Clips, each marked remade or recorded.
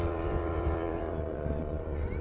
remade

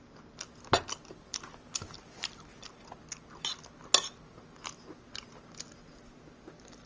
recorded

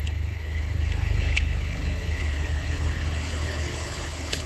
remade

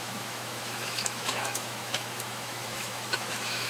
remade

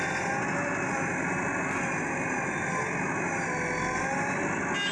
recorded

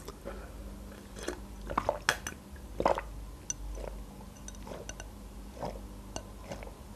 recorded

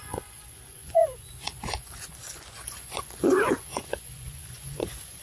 remade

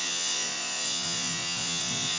remade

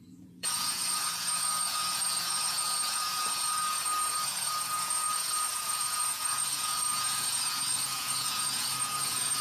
remade